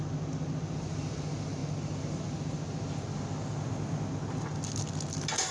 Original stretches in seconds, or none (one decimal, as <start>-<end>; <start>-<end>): 0.0-5.5